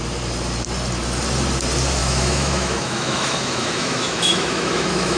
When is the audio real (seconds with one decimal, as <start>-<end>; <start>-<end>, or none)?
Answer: 0.0-2.0